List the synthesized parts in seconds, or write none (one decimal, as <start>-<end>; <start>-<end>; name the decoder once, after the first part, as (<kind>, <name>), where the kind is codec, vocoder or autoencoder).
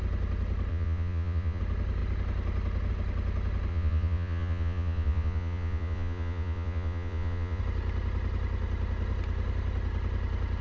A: 0.7-1.6 (vocoder, Vocos); 3.7-7.6